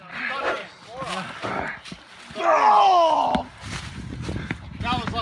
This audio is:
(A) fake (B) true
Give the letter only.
B